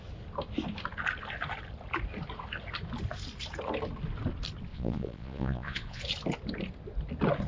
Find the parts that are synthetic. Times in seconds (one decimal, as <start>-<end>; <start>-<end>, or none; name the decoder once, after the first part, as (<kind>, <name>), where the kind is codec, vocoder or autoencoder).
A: 4.7-6.0 (vocoder, Vocos)

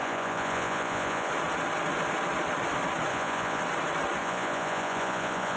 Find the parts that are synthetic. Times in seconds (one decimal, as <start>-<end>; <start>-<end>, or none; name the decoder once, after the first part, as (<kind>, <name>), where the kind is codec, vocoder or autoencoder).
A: 0.0-1.3 (vocoder, Vocos); 3.1-3.6; 4.2-5.6

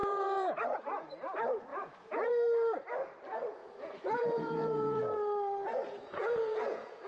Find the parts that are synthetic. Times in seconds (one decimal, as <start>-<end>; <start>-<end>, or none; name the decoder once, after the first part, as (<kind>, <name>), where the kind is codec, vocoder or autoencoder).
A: 0.0-1.1 (vocoder, Vocos); 1.7-2.3; 3.6-5.0; 5.8-7.1

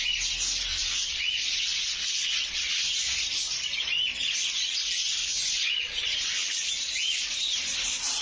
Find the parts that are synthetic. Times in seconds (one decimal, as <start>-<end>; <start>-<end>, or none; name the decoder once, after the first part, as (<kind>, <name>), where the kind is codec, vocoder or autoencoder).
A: 0.7-3.0 (vocoder, Vocos); 5.2-6.7

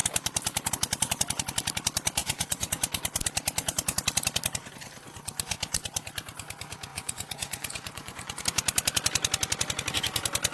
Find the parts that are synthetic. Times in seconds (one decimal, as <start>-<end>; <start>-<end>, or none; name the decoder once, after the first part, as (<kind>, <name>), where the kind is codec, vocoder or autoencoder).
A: 2.2-2.7 (vocoder, Vocos); 6.9-8.4

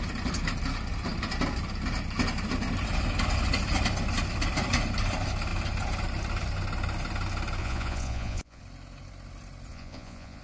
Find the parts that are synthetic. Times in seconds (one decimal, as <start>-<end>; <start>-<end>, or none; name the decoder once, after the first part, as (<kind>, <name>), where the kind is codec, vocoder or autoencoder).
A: 7.6-8.6 (vocoder, Vocos); 9.7-10.4

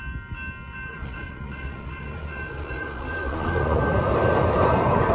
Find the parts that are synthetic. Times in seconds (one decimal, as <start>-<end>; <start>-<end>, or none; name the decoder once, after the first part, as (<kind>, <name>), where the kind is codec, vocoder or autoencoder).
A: 0.9-3.8 (vocoder, Vocos)